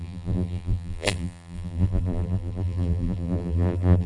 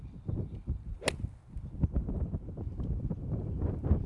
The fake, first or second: first